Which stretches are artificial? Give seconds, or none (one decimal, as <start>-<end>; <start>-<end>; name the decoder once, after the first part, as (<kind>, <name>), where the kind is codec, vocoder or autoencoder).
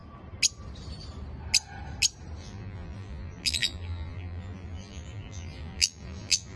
2.4-6.6 (vocoder, BigVGAN v2)